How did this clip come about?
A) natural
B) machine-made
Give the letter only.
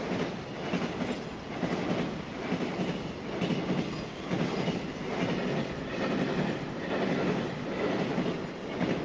A